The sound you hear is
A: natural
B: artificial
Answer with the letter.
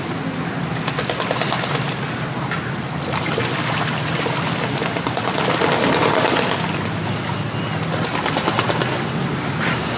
A